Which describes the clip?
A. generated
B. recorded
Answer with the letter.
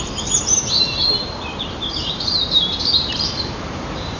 A